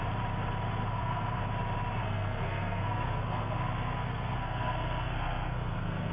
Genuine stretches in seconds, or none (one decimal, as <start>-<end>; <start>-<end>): 0.0-0.8; 1.4-2.0